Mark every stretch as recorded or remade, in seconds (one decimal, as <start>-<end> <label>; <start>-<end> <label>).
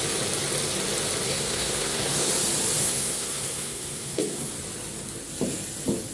0.0-1.3 recorded; 1.3-2.3 remade; 2.3-2.8 recorded; 2.8-4.5 remade; 4.5-6.1 recorded